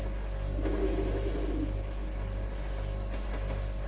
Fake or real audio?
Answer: real